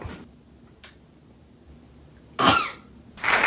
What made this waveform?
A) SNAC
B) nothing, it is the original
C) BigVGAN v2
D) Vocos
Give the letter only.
B